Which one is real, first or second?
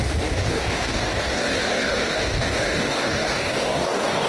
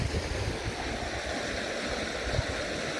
second